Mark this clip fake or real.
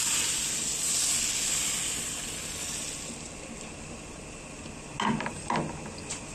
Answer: real